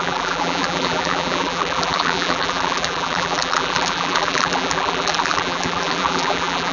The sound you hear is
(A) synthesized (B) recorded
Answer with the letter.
A